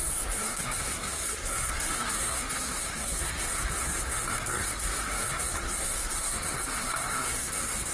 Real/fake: fake